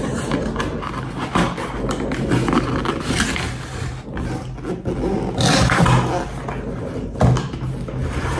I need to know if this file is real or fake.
real